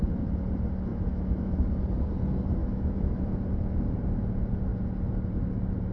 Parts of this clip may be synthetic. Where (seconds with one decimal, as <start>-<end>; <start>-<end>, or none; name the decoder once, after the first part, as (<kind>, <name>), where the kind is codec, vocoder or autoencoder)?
0.9-1.5 (autoencoder, DAC-VAE); 2.6-3.3

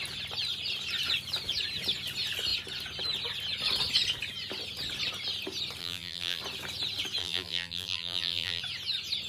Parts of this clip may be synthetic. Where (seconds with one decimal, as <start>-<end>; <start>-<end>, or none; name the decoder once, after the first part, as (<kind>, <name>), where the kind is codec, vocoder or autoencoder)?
5.8-6.4 (vocoder, BigVGAN v2); 7.2-8.6

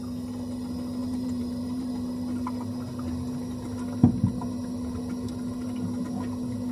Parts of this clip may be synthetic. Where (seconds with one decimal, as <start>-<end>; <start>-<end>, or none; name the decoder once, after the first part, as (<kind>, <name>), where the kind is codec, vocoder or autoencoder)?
1.0-1.9 (vocoder, BigVGAN v2)

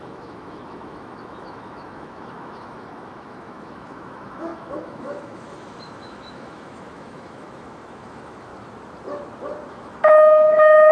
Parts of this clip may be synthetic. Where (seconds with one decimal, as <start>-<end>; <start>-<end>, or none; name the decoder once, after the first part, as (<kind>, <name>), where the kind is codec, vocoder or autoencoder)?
0.0-8.5 (autoencoder, DAC-VAE); 9.7-10.9

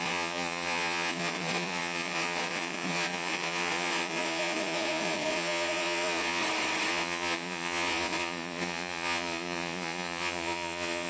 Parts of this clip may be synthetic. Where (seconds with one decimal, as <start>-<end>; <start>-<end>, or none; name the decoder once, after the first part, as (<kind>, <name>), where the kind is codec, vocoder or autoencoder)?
0.0-6.4 (vocoder, Vocos); 6.9-11.1

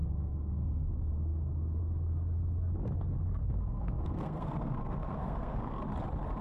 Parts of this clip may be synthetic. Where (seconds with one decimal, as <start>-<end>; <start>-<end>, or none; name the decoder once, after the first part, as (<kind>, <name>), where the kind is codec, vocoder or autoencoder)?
0.0-0.9 (codec, SNAC); 3.4-5.8